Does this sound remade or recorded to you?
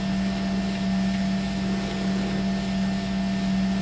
recorded